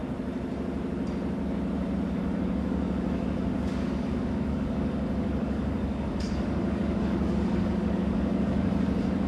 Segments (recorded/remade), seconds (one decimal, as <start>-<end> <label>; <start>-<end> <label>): 0.0-2.1 recorded; 2.1-9.3 remade